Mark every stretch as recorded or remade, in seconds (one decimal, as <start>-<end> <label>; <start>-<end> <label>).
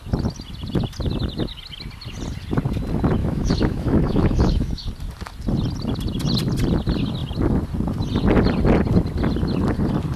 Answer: 0.0-3.2 recorded; 3.2-4.9 remade; 4.9-10.2 recorded